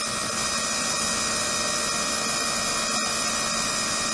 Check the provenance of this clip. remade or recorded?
recorded